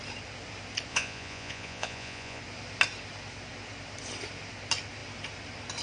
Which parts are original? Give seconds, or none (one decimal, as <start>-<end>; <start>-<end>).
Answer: 0.0-0.9; 2.4-5.8

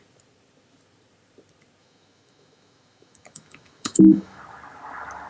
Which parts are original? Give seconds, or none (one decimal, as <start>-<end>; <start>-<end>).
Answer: 0.0-1.8; 4.4-5.3

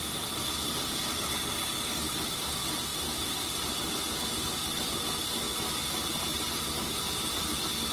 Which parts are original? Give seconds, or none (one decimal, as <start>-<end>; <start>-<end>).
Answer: 0.0-7.9

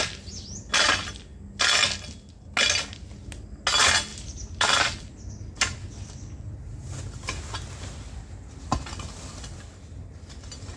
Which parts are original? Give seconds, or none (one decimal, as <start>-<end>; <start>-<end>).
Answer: 0.0-4.1; 5.3-10.8